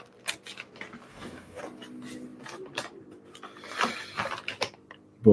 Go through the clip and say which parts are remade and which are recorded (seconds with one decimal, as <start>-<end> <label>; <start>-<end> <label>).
0.0-1.1 recorded; 1.1-1.6 remade; 1.6-5.3 recorded